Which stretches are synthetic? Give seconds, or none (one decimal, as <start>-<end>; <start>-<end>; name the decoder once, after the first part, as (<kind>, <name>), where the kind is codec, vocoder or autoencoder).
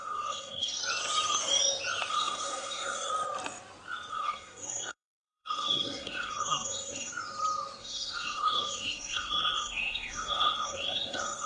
0.0-0.8 (codec, SNAC); 2.1-3.1; 4.1-7.1; 7.8-11.5